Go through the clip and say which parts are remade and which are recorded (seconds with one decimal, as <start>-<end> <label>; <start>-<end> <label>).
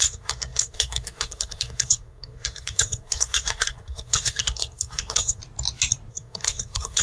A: 0.0-5.4 remade; 5.4-6.1 recorded; 6.1-7.0 remade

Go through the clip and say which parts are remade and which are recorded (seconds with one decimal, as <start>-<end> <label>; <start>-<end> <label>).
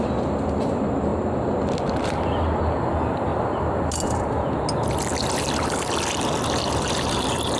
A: 0.0-7.6 recorded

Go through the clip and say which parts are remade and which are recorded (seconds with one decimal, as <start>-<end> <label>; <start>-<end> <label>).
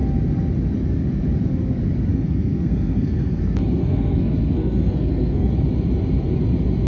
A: 0.0-2.1 recorded; 2.1-3.4 remade; 3.4-3.8 recorded; 3.8-5.5 remade; 5.5-6.9 recorded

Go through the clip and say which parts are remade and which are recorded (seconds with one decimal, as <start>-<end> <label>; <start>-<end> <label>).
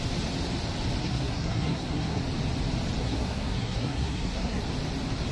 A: 0.0-1.0 recorded; 1.0-2.2 remade; 2.2-3.0 recorded; 3.0-4.6 remade; 4.6-5.3 recorded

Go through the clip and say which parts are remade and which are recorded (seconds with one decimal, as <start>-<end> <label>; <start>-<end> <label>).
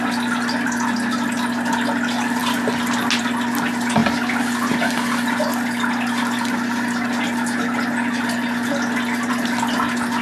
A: 0.0-10.2 recorded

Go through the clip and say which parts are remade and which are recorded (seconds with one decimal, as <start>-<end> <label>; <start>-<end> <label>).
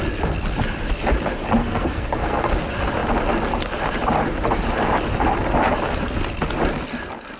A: 0.0-1.6 recorded; 1.6-2.5 remade; 2.5-7.4 recorded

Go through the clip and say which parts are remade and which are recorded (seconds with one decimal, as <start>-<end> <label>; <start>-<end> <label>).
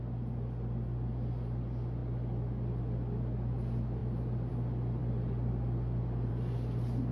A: 0.0-7.1 recorded